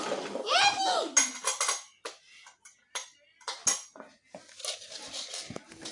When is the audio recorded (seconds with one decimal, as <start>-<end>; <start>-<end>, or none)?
0.0-5.9